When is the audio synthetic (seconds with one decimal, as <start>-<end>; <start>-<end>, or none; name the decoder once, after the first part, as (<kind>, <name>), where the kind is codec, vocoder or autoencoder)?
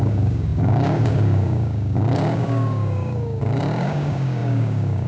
0.0-5.1 (codec, DAC)